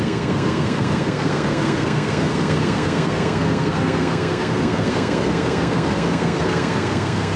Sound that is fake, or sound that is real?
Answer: fake